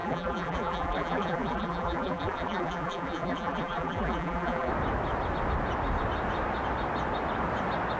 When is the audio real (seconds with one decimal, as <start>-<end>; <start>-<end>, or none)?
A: 4.7-8.0

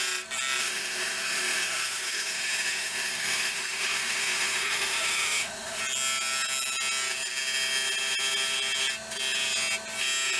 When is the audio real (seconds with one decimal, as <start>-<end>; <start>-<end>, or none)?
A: 0.0-0.6; 5.8-10.4